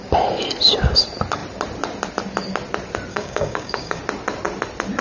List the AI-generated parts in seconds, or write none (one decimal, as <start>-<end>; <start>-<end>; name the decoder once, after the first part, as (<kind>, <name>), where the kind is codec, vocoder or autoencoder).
3.1-4.0 (codec, DAC)